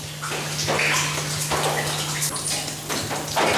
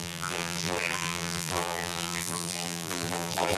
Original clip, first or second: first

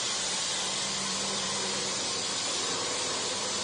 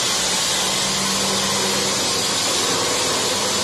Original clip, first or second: second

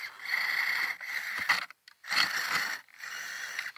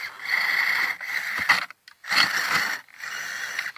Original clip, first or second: second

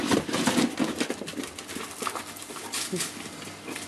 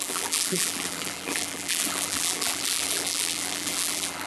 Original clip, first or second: first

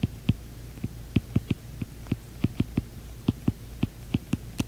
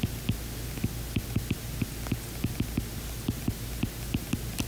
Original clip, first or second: second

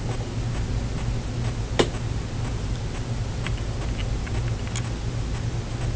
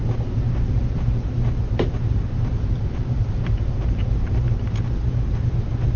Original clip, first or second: first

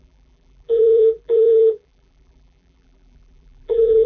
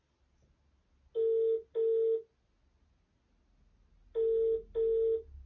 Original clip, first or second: second